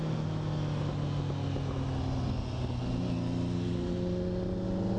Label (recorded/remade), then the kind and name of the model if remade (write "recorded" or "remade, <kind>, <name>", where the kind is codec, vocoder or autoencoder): recorded